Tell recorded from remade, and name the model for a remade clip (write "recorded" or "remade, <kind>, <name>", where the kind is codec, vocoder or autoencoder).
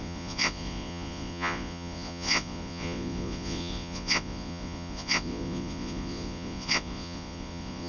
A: remade, vocoder, Vocos